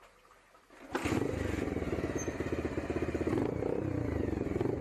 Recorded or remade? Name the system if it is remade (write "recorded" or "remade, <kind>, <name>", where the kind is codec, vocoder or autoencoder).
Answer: recorded